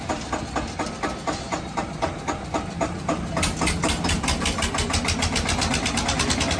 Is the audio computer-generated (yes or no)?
no